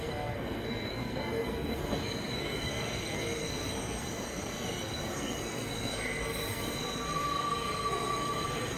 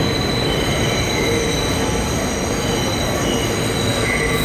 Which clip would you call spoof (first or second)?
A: first